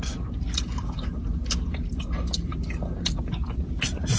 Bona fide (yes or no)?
yes